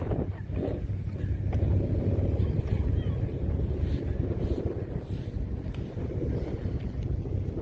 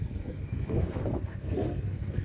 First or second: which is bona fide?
first